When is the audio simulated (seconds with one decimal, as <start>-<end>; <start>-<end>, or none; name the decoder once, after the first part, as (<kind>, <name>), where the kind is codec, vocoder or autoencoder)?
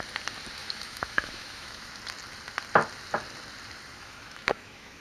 0.6-1.9 (autoencoder, DAC-VAE); 3.9-5.0